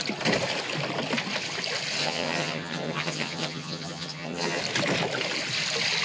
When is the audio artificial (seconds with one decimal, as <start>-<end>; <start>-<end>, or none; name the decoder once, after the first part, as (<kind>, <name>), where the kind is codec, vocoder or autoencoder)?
2.0-4.6 (vocoder, HiFi-GAN)